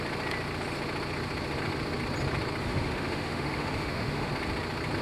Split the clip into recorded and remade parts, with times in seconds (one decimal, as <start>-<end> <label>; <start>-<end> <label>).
0.0-2.6 recorded; 2.6-4.3 remade; 4.3-5.0 recorded